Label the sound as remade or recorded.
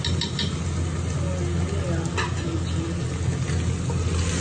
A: recorded